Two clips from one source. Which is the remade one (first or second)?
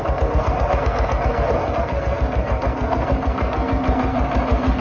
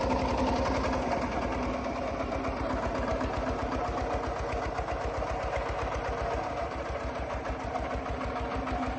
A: first